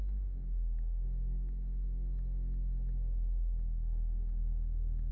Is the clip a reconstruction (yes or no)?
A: yes